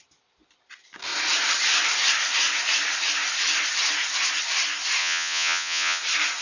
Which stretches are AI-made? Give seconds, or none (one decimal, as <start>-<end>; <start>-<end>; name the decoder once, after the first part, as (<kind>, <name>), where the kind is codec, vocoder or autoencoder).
5.0-6.0 (vocoder, Vocos)